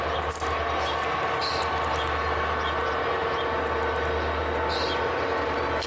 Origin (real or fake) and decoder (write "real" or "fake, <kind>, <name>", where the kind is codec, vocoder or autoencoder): real